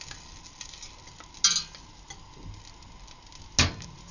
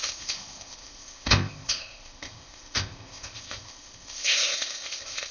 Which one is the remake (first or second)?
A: second